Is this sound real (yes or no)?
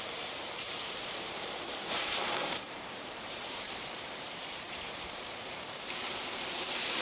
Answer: no